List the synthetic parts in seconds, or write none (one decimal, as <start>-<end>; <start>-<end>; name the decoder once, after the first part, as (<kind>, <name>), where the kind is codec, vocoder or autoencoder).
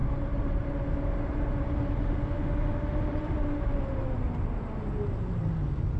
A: 0.0-0.7 (vocoder, BigVGAN v2); 2.9-6.0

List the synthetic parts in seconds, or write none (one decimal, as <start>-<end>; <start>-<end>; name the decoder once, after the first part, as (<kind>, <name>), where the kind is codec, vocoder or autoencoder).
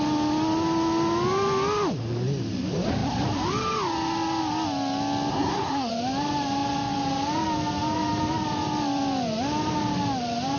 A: 5.3-5.9 (codec, SNAC)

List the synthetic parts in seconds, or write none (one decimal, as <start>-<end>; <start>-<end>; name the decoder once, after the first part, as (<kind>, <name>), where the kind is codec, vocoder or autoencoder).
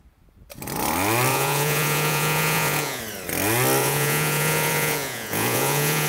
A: 1.3-3.0 (vocoder, Vocos); 3.8-6.1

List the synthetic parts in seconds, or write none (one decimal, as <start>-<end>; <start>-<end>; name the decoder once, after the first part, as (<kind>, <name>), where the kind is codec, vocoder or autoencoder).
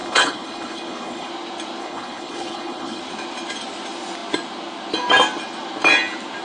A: 0.0-1.3 (codec, HILCodec); 1.8-3.0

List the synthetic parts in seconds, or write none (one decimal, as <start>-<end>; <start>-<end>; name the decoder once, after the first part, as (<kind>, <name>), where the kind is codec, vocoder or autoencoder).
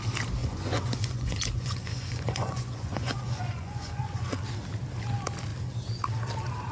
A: 0.4-4.4 (vocoder, Vocos)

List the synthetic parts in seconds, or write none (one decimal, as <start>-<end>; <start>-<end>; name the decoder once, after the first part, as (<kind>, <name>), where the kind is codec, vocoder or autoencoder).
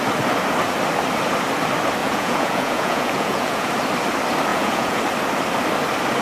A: 2.0-3.7 (vocoder, Vocos); 4.5-5.0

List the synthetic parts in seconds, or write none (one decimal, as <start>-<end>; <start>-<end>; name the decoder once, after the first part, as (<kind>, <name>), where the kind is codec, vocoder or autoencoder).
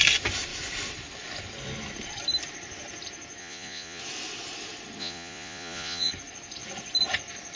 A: 3.4-4.0 (vocoder, Vocos); 5.0-6.1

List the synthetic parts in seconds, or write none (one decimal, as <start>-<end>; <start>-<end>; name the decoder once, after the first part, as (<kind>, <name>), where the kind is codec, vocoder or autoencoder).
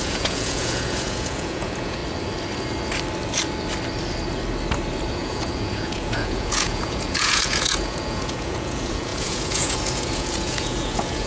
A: 0.0-2.0 (vocoder, Vocos); 5.1-11.3